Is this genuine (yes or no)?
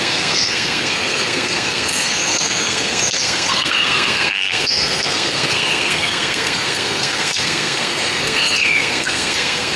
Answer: no